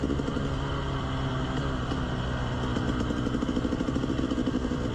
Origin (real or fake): real